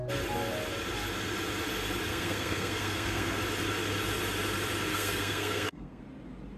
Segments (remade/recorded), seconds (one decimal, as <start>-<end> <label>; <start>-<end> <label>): 0.0-2.1 recorded; 2.1-3.4 remade; 3.4-4.9 recorded; 4.9-6.0 remade; 6.0-6.6 recorded